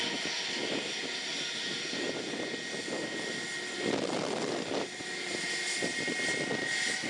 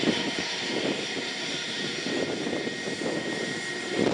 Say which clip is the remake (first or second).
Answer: second